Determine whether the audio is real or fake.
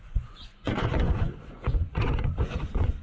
fake